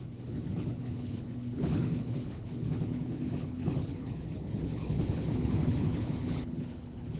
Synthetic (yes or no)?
yes